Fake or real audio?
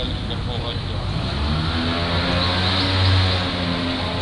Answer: real